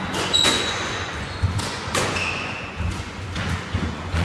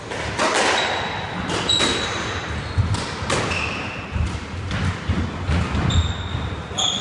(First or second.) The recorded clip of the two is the second